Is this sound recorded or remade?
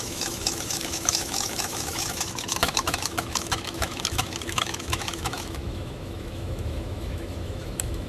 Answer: remade